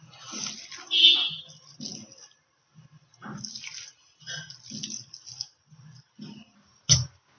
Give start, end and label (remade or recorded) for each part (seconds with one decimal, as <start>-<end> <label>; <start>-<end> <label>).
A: 0.0-7.4 recorded